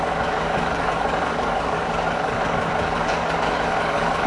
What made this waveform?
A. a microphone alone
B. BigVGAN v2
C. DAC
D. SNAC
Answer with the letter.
C